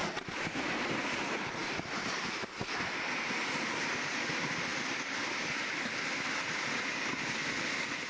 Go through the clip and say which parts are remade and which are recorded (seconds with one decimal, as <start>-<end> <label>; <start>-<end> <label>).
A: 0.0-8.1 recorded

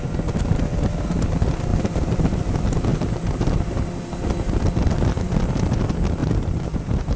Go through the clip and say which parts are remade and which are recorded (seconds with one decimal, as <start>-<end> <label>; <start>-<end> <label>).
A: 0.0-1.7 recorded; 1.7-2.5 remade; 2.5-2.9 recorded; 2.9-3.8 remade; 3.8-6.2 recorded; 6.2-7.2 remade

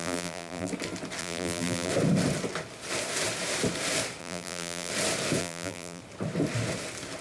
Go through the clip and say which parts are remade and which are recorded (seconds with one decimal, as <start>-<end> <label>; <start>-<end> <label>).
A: 0.0-0.7 remade; 0.7-1.2 recorded; 1.2-1.9 remade; 1.9-4.2 recorded; 4.2-4.9 remade; 4.9-5.4 recorded; 5.4-6.0 remade; 6.0-7.2 recorded